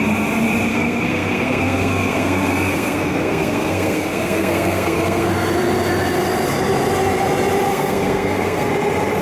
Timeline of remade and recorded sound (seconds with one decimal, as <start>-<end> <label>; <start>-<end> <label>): 0.0-0.7 recorded; 0.7-5.3 remade; 5.3-7.7 recorded; 7.7-8.7 remade; 8.7-9.2 recorded